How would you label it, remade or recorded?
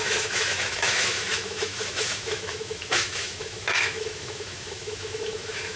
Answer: remade